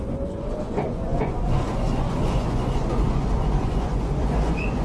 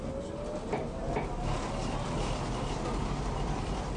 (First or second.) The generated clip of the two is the first